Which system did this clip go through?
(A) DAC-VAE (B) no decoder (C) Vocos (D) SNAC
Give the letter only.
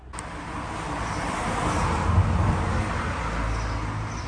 B